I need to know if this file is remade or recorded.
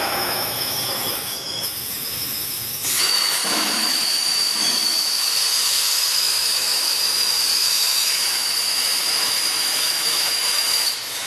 remade